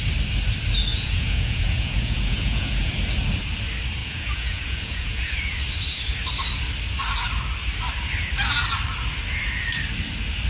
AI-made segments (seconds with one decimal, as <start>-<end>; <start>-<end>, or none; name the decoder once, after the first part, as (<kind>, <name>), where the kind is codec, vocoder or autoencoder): 0.9-2.9 (vocoder, Vocos); 4.0-5.4